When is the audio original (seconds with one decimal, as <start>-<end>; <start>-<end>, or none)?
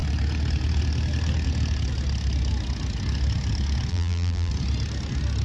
0.0-3.9; 4.5-5.4